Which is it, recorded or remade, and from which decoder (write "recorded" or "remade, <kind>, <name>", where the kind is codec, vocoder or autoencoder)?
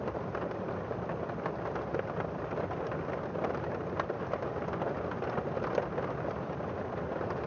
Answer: recorded